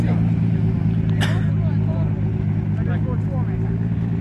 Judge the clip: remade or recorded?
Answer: recorded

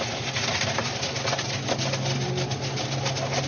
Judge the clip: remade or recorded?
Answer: recorded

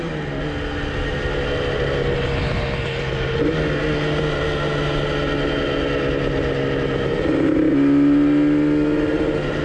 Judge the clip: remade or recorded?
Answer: recorded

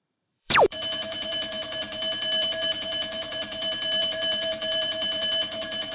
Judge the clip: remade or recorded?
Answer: remade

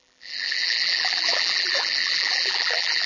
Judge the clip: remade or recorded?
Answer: remade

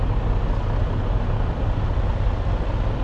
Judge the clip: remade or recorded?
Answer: remade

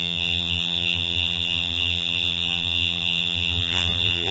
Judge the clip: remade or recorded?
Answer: remade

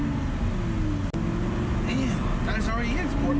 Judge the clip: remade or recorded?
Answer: recorded